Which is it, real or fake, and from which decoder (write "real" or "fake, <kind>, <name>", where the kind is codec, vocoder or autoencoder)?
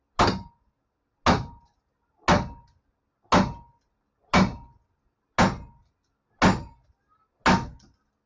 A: real